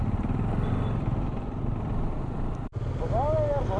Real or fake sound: real